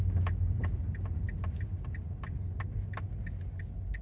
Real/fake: real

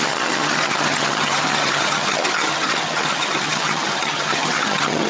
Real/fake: fake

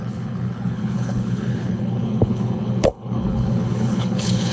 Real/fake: fake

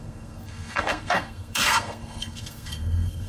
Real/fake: fake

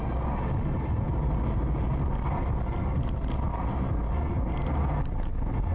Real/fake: real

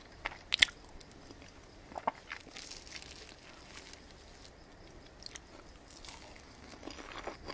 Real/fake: real